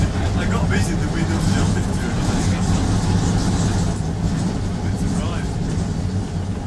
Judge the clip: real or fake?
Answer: real